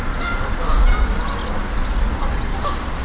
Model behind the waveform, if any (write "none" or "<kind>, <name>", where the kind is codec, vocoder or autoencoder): none